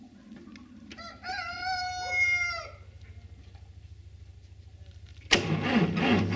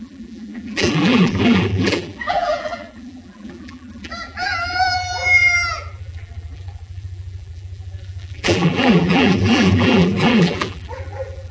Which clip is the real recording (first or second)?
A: first